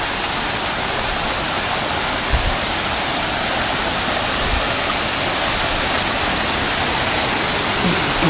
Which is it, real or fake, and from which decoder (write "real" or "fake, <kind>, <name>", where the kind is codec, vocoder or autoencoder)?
real